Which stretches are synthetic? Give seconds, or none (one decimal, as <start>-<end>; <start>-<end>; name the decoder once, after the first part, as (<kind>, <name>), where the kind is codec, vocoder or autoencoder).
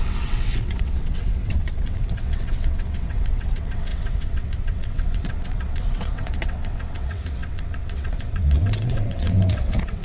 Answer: 0.0-10.0 (vocoder, WaveNeXt)